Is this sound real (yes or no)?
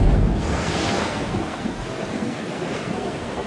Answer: no